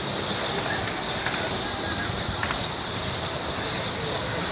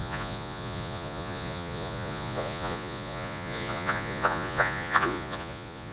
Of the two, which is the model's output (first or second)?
second